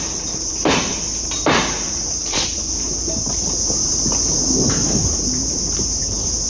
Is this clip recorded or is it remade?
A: remade